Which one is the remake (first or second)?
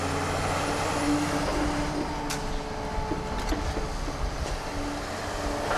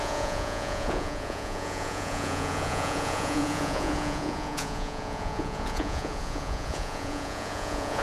second